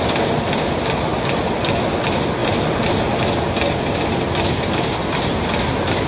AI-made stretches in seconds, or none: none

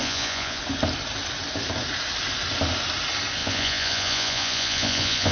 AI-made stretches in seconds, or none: 0.0-0.6 (vocoder, Vocos); 3.4-5.3

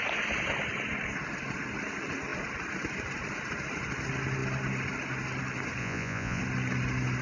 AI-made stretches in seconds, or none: 5.8-6.4 (vocoder, Vocos)